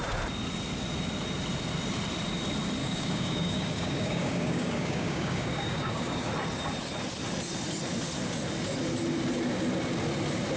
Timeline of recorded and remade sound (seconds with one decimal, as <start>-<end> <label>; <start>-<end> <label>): 0.0-2.8 recorded; 2.8-6.3 remade; 6.3-10.6 recorded